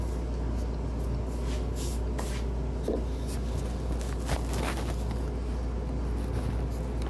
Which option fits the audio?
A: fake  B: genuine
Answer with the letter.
B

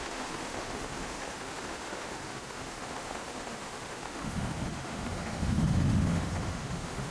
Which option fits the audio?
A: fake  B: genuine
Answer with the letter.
A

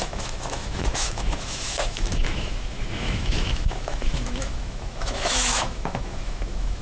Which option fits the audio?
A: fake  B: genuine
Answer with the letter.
A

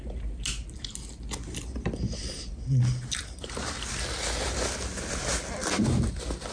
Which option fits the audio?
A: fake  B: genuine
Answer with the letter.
B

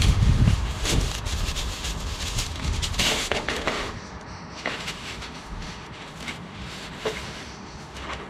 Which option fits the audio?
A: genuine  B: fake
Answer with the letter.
B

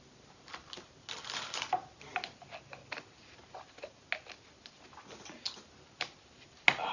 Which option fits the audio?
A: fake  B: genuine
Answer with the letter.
B